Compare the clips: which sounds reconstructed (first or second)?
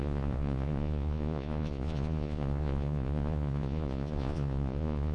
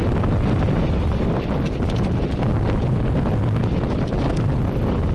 first